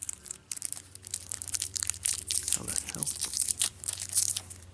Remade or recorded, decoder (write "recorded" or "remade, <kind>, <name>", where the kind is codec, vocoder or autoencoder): remade, vocoder, BigVGAN v2